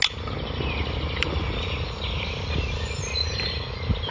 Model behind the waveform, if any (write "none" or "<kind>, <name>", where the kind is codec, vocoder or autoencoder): none